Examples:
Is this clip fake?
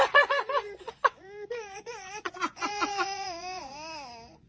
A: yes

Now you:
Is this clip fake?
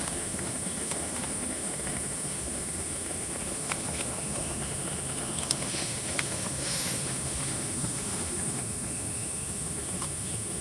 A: yes